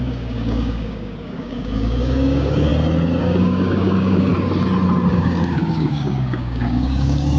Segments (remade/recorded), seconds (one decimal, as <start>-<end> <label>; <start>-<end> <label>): 0.0-2.7 remade; 2.7-3.2 recorded; 3.2-4.3 remade; 4.3-5.1 recorded; 5.1-7.4 remade